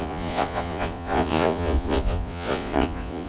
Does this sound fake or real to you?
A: fake